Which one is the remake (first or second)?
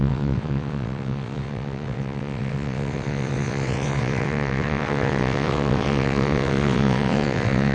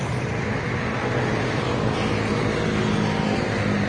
first